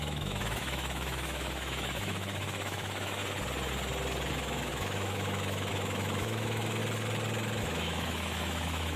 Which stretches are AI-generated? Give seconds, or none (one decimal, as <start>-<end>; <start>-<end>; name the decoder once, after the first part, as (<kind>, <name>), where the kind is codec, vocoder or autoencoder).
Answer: 0.0-3.2 (autoencoder, DAC-VAE); 4.3-6.8; 7.6-9.0